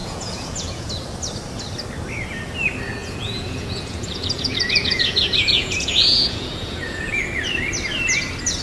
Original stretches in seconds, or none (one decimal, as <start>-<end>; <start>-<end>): 0.9-3.0; 7.2-8.6